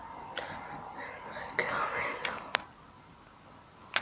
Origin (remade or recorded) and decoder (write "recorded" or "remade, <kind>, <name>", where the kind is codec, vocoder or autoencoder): recorded